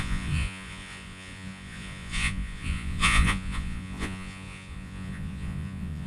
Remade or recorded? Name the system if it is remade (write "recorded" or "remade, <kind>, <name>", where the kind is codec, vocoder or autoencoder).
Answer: remade, vocoder, Vocos